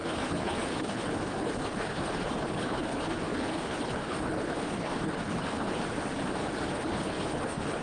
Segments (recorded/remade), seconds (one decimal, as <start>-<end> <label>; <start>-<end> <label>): 0.0-5.8 remade; 5.8-6.7 recorded; 6.7-7.8 remade